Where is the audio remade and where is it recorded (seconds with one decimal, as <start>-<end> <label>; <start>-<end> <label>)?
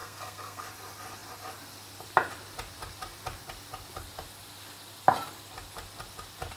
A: 0.0-0.6 remade; 0.6-6.6 recorded